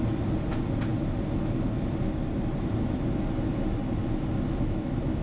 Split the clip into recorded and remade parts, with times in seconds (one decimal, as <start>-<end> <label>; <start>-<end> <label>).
0.0-5.2 recorded